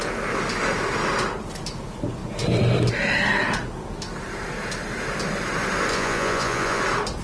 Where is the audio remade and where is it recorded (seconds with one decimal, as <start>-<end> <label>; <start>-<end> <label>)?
0.0-5.9 recorded; 5.9-6.8 remade; 6.8-7.2 recorded